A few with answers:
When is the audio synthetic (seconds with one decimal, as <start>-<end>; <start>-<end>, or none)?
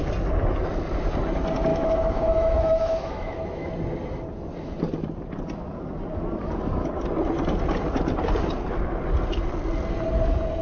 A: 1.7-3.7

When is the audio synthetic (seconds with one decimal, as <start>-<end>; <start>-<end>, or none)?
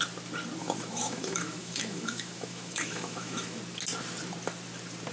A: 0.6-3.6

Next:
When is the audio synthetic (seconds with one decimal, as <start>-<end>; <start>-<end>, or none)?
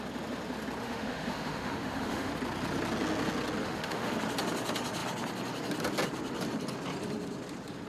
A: 0.8-2.3; 3.6-4.1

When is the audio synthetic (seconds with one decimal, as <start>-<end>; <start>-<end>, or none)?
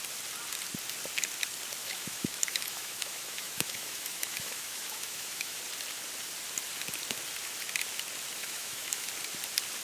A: 1.8-5.6; 8.4-9.1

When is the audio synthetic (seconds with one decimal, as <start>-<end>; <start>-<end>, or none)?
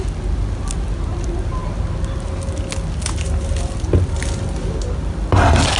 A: none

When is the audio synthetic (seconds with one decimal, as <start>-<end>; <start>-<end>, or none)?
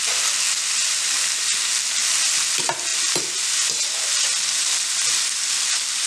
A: none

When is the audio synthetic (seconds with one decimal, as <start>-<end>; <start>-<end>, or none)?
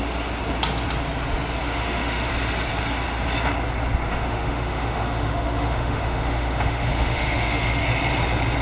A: 1.6-2.3; 4.1-7.8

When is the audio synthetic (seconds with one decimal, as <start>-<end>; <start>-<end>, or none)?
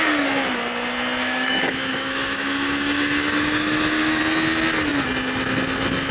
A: 1.2-4.2